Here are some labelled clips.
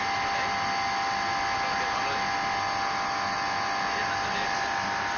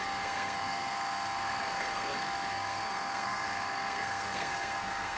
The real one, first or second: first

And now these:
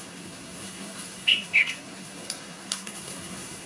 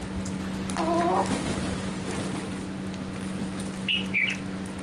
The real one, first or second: second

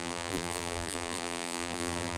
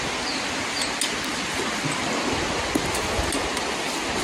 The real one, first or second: second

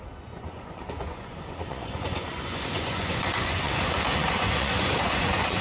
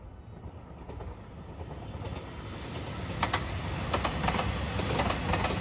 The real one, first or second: second